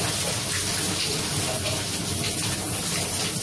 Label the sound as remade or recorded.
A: recorded